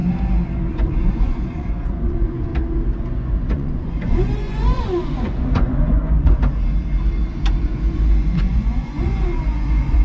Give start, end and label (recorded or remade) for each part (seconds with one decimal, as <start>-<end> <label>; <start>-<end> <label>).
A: 0.0-0.7 recorded; 0.7-2.5 remade; 2.5-3.0 recorded; 3.0-6.4 remade; 6.4-7.6 recorded; 7.6-10.0 remade

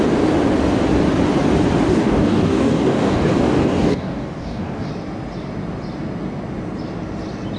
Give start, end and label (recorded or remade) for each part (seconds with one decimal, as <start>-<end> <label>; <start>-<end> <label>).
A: 0.0-1.9 recorded; 1.9-4.9 remade; 4.9-7.6 recorded

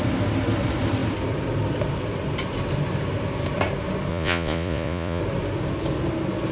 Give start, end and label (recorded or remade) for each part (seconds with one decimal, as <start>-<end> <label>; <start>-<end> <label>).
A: 0.0-4.1 recorded; 4.1-5.2 remade; 5.2-6.5 recorded

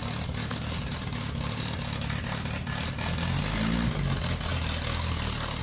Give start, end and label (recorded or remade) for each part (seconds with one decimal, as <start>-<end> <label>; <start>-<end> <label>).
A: 0.0-5.6 recorded